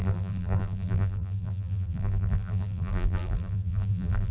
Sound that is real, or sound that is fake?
fake